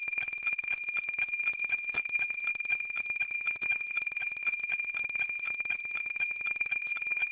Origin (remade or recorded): remade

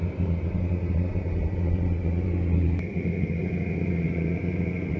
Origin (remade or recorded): recorded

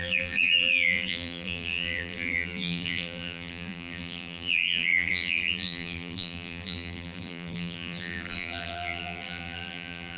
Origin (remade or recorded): remade